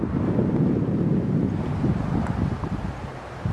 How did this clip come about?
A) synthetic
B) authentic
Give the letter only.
B